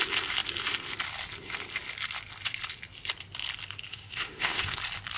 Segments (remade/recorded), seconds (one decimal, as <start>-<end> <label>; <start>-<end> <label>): 0.0-3.9 recorded; 3.9-4.8 remade; 4.8-5.2 recorded